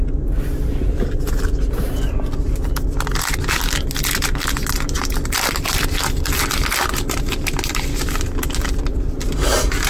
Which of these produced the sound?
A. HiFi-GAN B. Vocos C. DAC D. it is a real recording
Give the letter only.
D